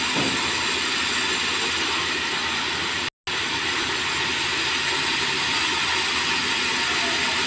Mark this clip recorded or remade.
recorded